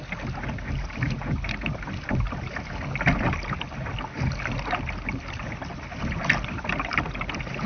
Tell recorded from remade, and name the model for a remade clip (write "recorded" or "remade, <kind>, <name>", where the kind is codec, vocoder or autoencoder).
recorded